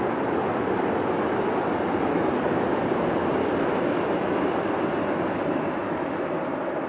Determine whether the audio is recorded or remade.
recorded